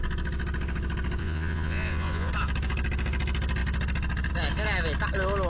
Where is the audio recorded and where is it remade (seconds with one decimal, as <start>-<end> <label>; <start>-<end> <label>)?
0.0-1.2 recorded; 1.2-2.3 remade; 2.3-5.5 recorded